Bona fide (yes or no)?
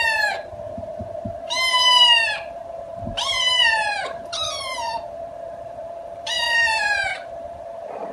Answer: no